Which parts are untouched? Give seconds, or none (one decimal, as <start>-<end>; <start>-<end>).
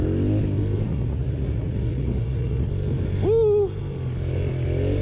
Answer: 0.0-0.9; 2.7-5.0